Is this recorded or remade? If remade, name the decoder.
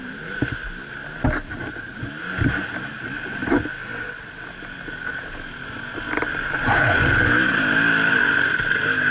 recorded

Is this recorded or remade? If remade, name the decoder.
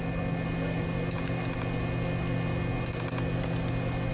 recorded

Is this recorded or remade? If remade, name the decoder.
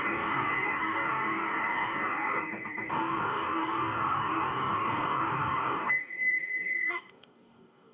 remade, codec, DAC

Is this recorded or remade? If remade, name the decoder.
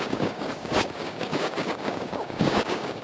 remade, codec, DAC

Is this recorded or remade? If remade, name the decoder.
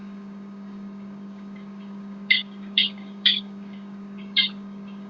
remade, codec, DAC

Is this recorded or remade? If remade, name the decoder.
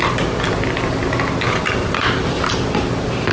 recorded